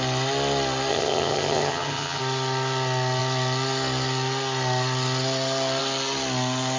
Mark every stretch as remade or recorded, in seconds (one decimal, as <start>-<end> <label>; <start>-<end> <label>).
0.0-0.9 recorded; 0.9-2.2 remade; 2.2-6.8 recorded